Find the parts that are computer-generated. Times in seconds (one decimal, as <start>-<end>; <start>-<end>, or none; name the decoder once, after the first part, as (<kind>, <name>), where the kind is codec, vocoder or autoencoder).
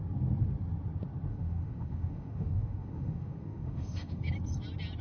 1.3-4.2 (autoencoder, DAC-VAE)